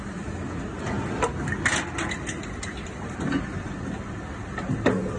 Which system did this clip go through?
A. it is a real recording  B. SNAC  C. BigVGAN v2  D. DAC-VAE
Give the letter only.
A